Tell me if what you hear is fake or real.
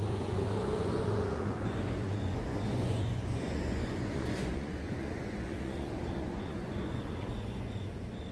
fake